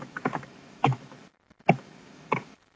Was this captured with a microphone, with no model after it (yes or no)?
no